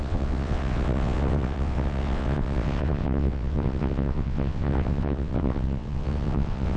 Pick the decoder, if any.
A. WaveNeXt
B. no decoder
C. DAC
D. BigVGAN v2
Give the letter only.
A